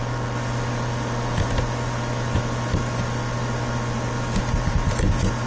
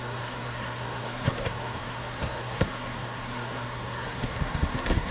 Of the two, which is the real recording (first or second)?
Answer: first